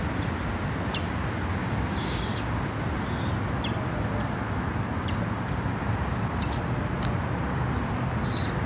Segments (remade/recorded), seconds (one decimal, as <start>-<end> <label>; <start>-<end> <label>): 0.0-1.6 recorded; 1.6-2.2 remade; 2.2-8.7 recorded